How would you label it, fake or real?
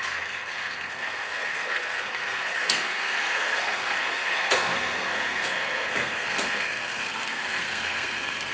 fake